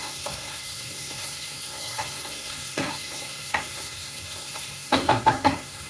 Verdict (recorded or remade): remade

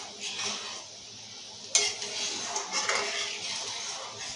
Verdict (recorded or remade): recorded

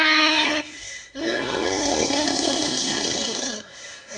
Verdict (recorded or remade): remade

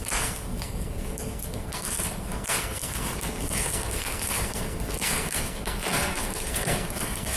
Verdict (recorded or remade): remade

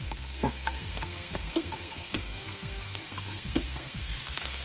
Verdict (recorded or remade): remade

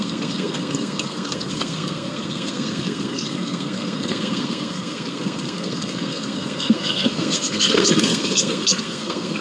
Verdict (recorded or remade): remade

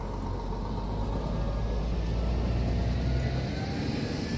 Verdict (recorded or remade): recorded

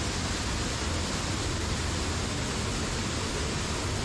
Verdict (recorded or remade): recorded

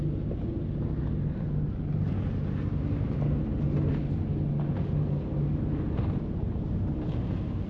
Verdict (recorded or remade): recorded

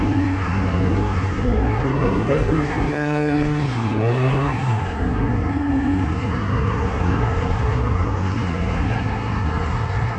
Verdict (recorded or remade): remade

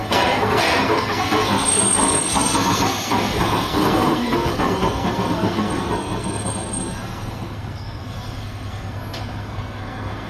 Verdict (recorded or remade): remade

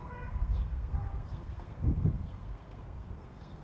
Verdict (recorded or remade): remade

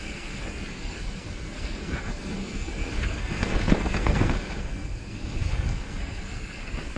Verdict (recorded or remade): remade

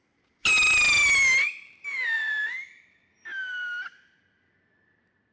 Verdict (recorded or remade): recorded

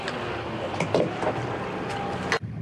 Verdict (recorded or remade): recorded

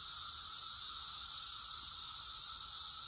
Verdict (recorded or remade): recorded